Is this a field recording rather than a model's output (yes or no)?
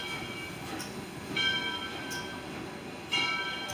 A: yes